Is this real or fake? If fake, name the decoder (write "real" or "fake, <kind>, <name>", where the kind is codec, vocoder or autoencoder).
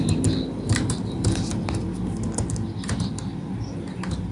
real